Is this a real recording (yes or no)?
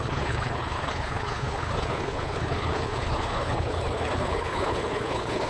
no